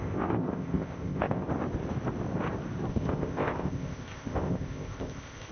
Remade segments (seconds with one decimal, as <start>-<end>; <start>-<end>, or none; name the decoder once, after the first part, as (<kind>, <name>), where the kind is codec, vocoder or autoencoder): 0.0-1.5 (codec, ZipCodec); 2.9-5.5